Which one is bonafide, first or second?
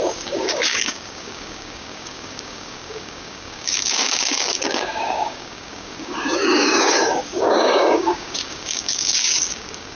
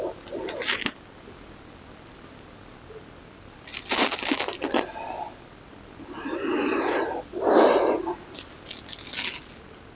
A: second